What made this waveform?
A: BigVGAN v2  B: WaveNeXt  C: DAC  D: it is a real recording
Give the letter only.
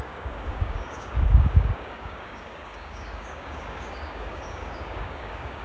C